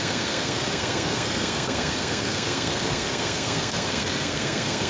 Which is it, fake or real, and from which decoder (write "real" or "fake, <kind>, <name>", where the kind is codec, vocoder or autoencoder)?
fake, codec, SNAC